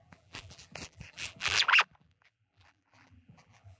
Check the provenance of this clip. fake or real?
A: fake